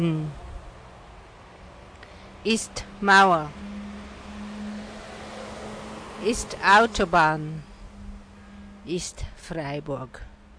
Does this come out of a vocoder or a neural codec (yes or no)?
no